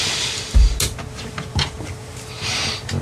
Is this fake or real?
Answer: real